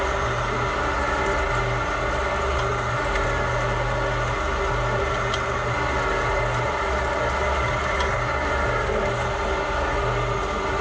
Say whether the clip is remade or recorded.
recorded